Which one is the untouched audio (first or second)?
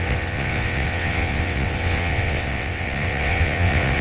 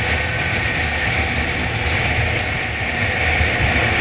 second